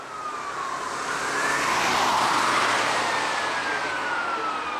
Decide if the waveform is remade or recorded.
recorded